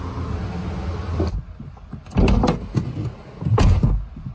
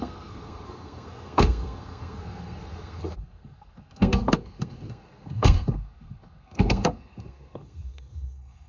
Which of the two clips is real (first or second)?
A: first